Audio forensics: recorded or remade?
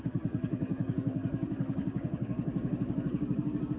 remade